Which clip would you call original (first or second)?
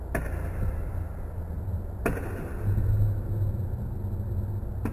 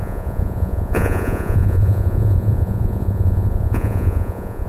first